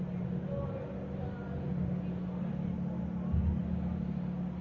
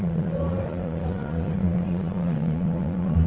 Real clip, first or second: first